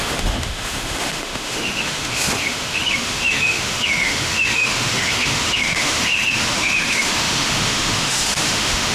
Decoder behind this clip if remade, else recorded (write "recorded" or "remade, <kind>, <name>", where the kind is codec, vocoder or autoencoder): remade, autoencoder, DAC-VAE